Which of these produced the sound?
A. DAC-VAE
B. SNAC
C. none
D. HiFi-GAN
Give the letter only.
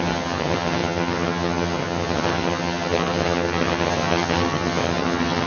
D